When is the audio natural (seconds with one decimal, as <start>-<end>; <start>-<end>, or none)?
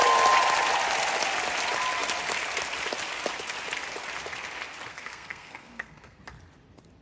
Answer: 0.0-4.9; 6.2-7.0